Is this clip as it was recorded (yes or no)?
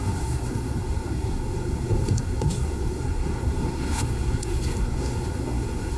no